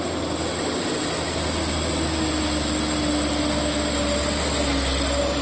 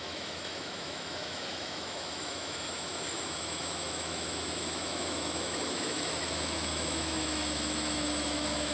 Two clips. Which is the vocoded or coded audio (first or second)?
second